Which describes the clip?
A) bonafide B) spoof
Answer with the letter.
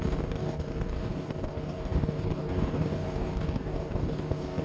B